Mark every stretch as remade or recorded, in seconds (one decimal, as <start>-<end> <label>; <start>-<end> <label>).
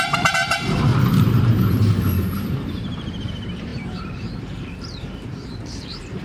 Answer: 0.0-0.9 remade; 0.9-1.7 recorded; 1.7-6.2 remade